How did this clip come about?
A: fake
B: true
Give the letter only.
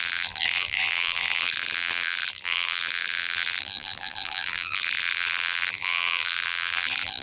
A